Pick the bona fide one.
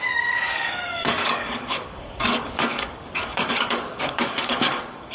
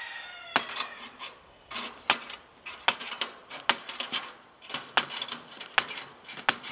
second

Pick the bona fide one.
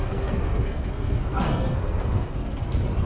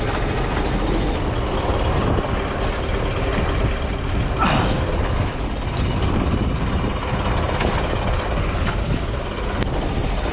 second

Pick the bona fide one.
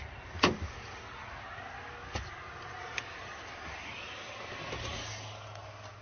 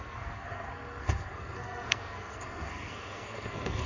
first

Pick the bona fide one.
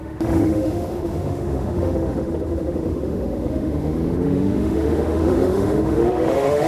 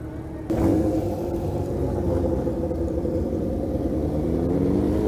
second